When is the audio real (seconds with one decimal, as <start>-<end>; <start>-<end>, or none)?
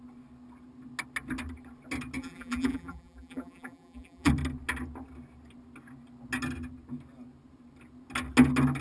0.0-2.2; 4.3-8.8